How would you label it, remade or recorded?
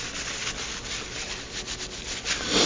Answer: recorded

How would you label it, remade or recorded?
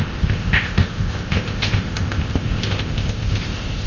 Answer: remade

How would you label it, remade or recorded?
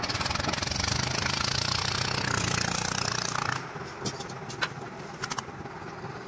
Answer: recorded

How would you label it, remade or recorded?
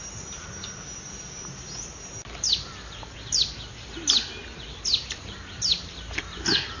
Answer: recorded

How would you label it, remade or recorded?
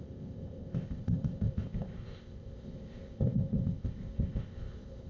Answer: remade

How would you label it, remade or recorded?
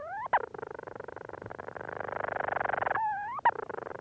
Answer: recorded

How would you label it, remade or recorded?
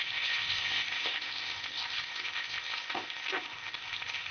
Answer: remade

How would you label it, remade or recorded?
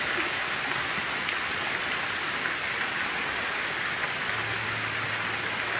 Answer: recorded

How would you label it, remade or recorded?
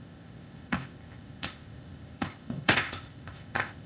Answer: remade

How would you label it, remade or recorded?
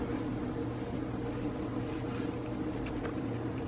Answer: recorded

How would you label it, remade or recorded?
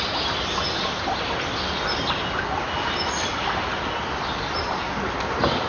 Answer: recorded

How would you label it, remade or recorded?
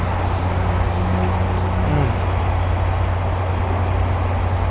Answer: recorded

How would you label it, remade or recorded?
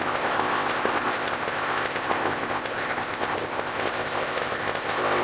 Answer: remade